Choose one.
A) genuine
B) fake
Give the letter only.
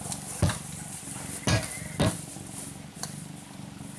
A